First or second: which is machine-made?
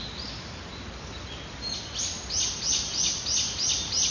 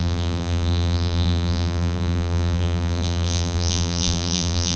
second